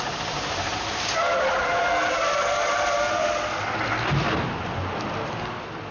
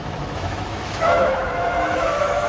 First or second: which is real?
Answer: first